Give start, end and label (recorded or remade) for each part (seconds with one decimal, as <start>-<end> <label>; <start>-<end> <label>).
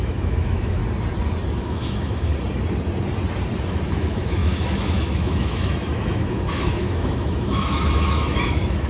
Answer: 0.0-0.8 remade; 0.8-1.6 recorded; 1.6-2.3 remade; 2.3-3.7 recorded; 3.7-8.9 remade